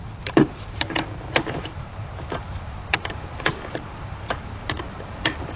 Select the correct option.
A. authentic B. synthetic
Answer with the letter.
B